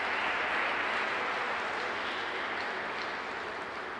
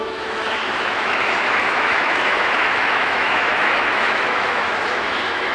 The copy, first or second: second